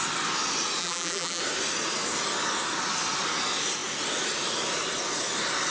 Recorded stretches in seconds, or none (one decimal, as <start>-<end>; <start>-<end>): 0.0-0.8; 1.4-5.7